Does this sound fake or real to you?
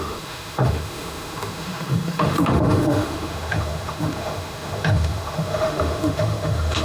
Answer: fake